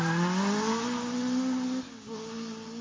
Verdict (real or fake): real